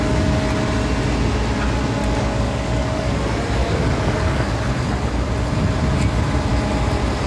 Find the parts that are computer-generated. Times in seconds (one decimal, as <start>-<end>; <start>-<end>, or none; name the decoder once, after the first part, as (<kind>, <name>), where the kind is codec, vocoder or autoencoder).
2.0-3.2 (codec, DAC); 3.6-4.7

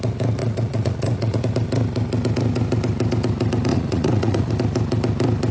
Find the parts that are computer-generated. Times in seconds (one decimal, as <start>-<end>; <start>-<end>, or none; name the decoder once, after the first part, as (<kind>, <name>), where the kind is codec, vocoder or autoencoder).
0.4-1.4 (vocoder, Vocos); 3.7-4.5

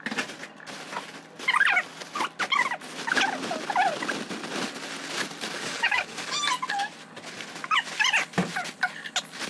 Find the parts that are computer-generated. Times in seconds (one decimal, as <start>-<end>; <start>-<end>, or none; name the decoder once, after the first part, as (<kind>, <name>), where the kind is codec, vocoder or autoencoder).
5.5-6.4 (codec, DAC)

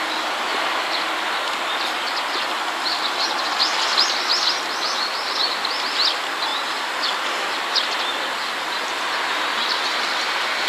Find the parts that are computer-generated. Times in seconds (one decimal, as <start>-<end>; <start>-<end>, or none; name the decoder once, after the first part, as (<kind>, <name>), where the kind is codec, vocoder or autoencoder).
6.5-7.7 (vocoder, BigVGAN v2)

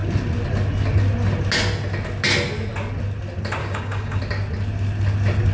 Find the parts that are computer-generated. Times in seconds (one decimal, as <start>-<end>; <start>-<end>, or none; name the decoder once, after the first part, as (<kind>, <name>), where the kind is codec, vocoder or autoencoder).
3.6-4.2 (codec, DAC)

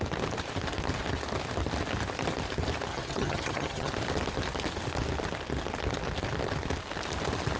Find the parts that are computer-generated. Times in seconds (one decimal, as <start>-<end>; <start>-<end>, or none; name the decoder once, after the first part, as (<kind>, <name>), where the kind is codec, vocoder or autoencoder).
2.9-3.9 (vocoder, HiFi-GAN)